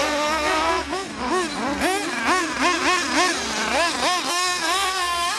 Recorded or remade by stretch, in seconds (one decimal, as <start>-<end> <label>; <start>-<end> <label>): 0.0-1.1 remade; 1.1-4.3 recorded; 4.3-5.4 remade